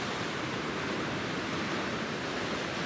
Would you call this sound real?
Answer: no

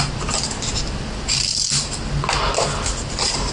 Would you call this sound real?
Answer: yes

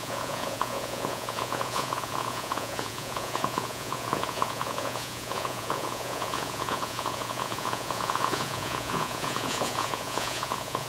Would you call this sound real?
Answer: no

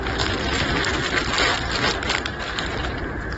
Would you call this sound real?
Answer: yes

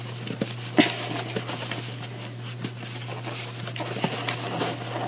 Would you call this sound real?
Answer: yes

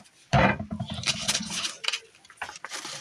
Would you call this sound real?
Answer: no